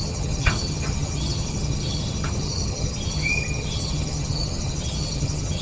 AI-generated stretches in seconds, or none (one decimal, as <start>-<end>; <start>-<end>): 0.0-5.6